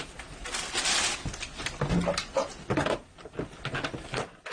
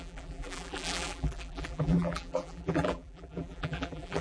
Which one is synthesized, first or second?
second